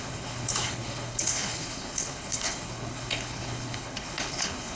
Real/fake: fake